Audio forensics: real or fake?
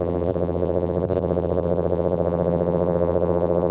fake